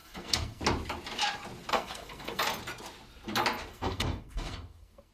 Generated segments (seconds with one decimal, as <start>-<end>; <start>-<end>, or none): 0.0-0.6; 1.7-2.4; 3.7-5.1